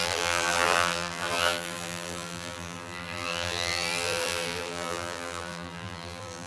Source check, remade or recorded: remade